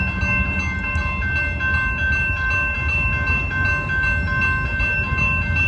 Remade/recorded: recorded